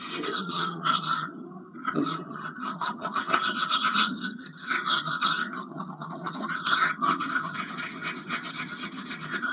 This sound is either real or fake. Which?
fake